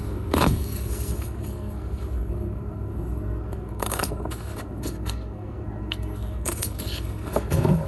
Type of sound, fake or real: fake